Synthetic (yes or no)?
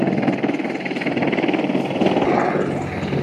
no